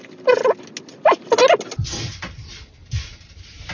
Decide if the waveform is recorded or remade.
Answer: recorded